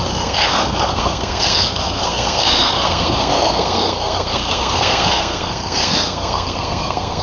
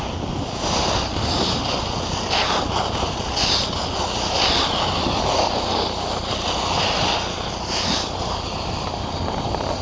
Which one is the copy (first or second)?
first